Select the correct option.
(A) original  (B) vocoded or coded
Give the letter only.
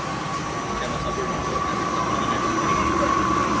A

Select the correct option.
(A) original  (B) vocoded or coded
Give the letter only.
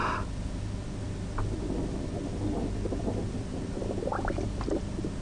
A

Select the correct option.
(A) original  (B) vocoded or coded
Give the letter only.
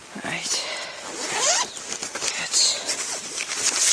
A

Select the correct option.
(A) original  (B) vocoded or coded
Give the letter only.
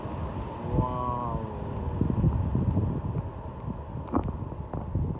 A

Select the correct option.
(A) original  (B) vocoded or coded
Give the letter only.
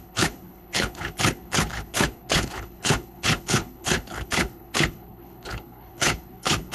B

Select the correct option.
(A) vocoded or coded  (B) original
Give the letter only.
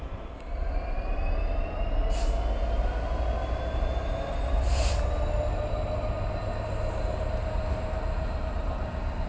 B